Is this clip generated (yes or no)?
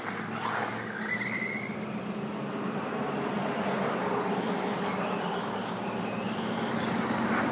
no